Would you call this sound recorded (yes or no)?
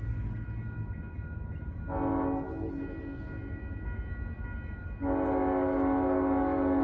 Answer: yes